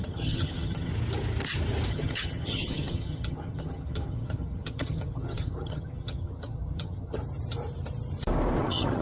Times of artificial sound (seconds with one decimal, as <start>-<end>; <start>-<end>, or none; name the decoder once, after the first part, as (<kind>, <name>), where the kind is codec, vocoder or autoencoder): 0.0-0.9 (vocoder, HiFi-GAN); 1.9-7.2; 8.6-9.0